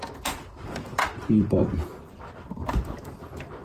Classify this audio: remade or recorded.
remade